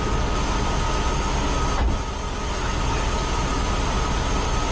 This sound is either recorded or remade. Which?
recorded